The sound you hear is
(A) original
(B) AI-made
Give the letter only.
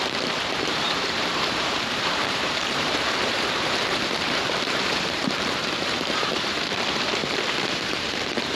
B